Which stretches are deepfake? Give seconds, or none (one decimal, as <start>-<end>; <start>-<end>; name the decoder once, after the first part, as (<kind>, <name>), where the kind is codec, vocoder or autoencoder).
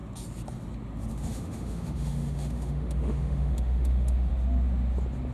1.1-4.3 (autoencoder, DAC-VAE)